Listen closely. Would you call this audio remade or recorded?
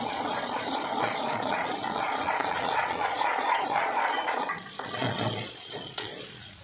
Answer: remade